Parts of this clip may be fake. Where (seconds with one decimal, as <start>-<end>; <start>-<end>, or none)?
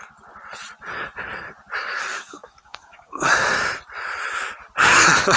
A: 1.8-3.3